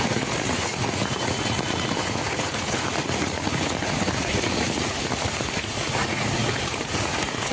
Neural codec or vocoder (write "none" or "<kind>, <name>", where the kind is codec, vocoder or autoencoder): vocoder, Vocos